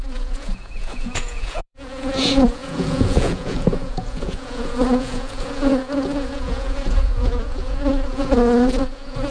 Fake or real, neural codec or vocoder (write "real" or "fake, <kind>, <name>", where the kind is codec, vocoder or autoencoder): fake, vocoder, Vocos